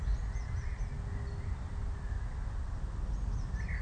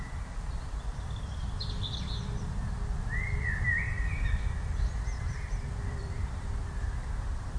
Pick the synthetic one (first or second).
second